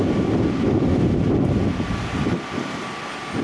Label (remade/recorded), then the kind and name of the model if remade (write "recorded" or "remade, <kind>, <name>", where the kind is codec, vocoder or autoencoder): recorded